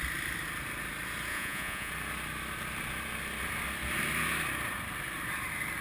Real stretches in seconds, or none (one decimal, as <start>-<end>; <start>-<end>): 0.0-1.3; 1.9-5.8